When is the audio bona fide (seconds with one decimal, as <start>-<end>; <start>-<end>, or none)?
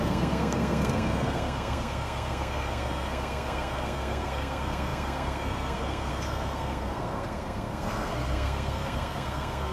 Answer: none